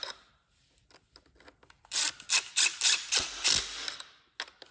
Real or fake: real